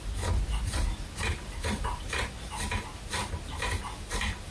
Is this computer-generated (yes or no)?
no